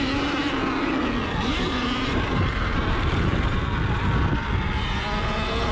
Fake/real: real